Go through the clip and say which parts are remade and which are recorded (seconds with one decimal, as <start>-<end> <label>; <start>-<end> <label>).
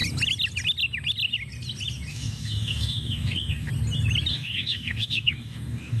0.0-2.1 recorded; 2.1-3.7 remade; 3.7-4.3 recorded; 4.3-6.0 remade